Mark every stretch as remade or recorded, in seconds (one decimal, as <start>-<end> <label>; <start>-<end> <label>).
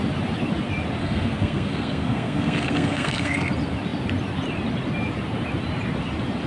0.0-1.0 recorded; 1.0-3.5 remade; 3.5-6.5 recorded